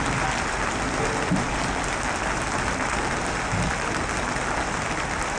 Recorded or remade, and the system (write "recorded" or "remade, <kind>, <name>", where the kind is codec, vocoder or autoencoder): recorded